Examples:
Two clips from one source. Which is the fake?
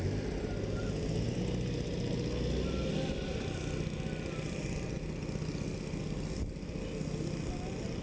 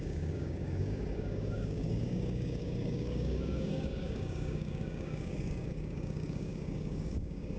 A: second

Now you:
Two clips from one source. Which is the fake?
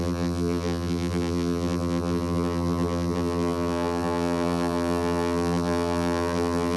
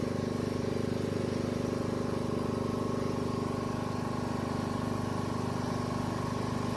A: first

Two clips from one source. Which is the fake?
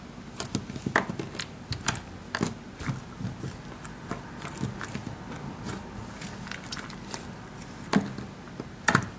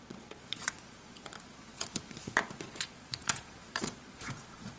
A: second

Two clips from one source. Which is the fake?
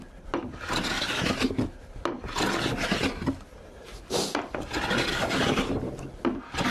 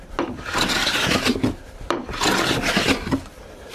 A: second